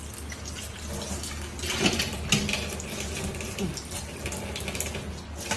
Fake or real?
real